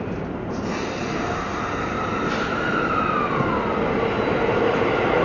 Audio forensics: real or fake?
real